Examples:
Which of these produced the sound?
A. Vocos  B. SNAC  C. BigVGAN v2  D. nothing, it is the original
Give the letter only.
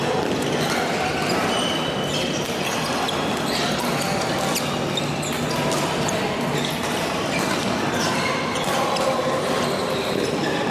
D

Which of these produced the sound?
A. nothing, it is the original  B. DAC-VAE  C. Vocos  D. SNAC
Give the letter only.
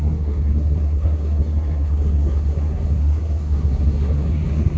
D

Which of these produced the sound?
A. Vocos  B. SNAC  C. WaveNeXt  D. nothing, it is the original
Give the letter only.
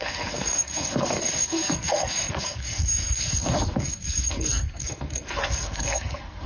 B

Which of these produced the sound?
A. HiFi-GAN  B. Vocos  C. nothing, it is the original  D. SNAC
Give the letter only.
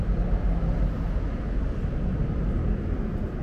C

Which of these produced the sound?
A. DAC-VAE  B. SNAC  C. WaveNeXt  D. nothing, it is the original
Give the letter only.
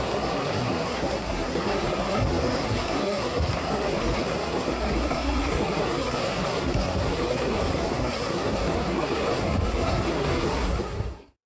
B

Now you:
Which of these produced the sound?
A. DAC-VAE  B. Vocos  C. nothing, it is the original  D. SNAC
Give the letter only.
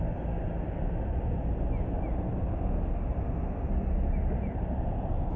C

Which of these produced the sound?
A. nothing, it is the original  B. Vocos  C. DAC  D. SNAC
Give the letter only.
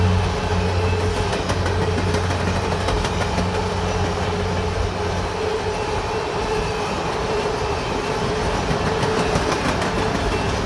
A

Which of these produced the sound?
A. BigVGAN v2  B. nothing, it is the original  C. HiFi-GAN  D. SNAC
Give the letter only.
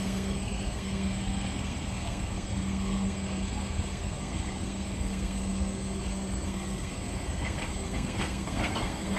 D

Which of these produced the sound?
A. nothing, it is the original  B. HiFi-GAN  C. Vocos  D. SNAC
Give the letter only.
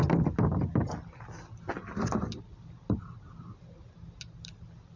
A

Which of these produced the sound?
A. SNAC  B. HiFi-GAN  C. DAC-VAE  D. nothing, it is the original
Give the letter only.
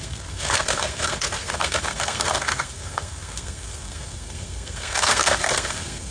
A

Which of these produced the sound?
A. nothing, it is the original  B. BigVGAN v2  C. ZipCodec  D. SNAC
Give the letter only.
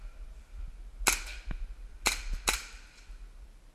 A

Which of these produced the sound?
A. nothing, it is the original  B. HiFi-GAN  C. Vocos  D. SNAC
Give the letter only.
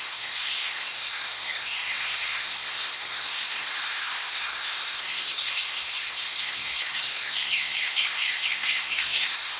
D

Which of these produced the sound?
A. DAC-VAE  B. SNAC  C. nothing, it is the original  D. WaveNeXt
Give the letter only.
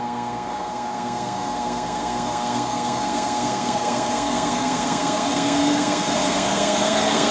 B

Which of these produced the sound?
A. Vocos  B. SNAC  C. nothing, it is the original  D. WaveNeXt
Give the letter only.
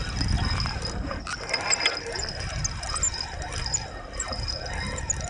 C